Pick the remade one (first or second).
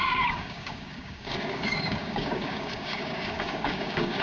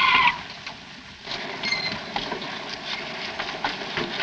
first